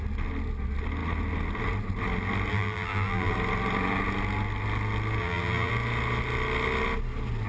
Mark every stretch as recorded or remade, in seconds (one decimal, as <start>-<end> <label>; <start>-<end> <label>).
0.0-2.5 recorded; 2.5-3.3 remade; 3.3-5.2 recorded; 5.2-5.7 remade; 5.7-7.5 recorded